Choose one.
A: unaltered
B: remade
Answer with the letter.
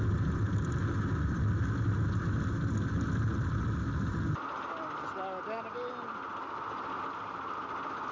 A